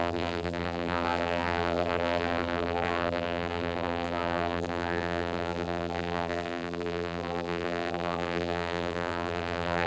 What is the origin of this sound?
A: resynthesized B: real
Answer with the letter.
A